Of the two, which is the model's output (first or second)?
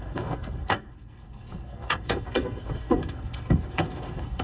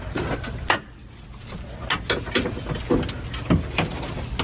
first